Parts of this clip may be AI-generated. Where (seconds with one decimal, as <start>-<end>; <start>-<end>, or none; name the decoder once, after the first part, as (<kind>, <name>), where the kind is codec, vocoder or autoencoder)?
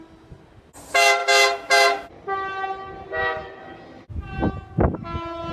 none